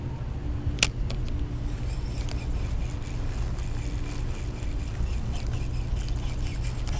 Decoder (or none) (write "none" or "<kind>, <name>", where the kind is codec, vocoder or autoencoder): none